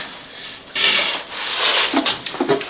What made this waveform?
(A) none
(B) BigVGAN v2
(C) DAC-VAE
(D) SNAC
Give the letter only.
A